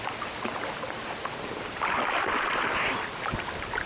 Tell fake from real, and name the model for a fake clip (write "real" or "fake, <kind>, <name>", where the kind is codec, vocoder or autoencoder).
real